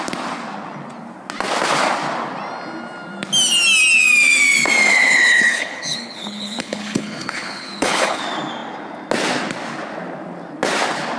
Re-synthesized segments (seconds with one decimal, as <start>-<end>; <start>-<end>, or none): 4.9-8.2